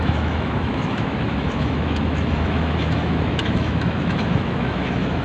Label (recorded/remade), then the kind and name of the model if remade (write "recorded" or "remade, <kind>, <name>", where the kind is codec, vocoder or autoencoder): remade, autoencoder, DAC-VAE